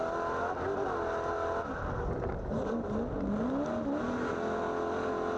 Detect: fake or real real